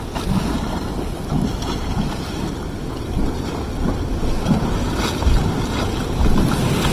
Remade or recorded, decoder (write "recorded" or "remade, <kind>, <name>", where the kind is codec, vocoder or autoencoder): recorded